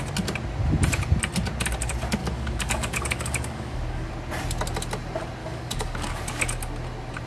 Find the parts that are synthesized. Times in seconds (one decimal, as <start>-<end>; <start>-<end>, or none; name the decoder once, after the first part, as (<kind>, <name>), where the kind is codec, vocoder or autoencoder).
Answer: 2.2-4.1 (codec, DAC); 5.4-6.2